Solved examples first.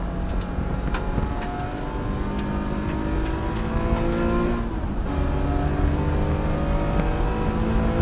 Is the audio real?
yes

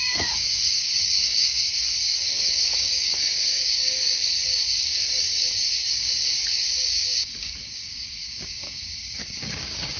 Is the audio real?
no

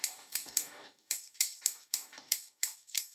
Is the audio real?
no